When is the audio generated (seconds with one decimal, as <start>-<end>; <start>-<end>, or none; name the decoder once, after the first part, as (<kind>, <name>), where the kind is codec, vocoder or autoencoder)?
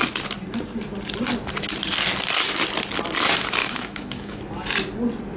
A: 3.6-4.4 (autoencoder, DAC-VAE)